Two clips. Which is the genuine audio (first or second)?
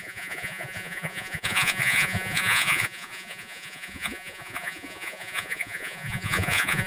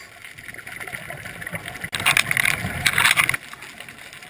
second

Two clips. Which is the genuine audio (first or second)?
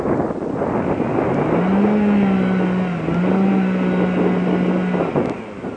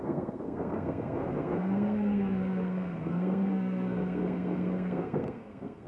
first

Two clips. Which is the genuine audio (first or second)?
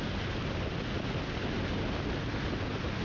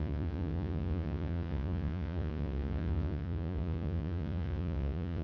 first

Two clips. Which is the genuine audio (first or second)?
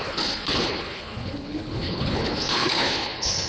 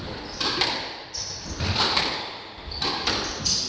second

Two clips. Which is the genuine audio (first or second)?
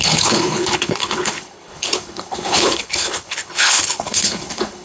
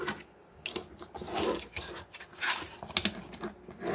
second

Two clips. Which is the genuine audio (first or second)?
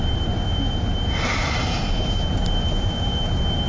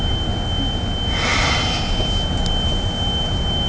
second